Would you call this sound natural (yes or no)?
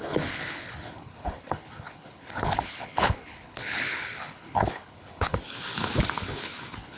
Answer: no